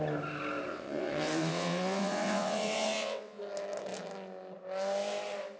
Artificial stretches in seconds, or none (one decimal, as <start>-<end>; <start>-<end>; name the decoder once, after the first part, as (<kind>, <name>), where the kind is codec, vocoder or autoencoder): 0.7-3.4 (vocoder, WaveNeXt)